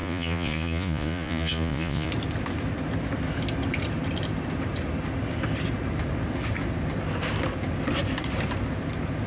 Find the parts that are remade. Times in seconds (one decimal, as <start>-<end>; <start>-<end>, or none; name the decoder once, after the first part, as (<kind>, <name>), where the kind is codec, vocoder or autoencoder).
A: 0.0-2.1 (vocoder, Vocos)